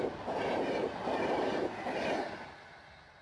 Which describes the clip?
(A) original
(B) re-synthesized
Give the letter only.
A